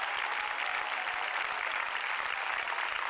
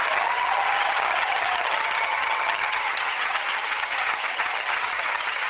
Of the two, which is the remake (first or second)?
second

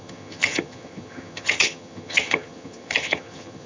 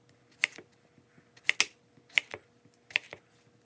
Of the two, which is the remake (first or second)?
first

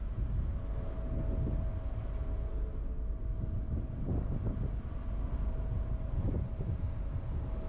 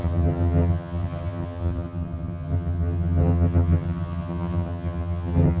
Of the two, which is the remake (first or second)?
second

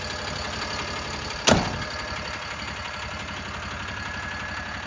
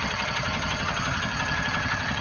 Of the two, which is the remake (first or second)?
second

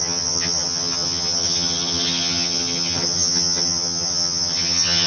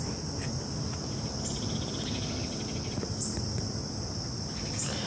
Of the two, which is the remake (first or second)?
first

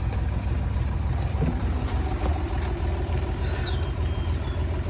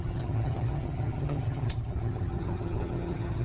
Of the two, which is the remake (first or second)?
second